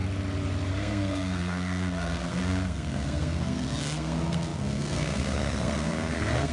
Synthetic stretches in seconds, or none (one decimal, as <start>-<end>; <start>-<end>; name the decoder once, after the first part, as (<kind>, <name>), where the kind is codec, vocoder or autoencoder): 0.7-6.5 (codec, SNAC)